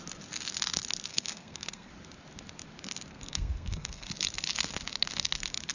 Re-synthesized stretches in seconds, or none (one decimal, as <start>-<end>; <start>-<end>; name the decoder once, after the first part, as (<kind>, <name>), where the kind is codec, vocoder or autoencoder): 1.1-1.9 (codec, SNAC); 3.1-4.1